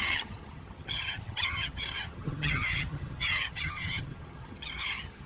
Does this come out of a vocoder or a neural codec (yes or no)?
yes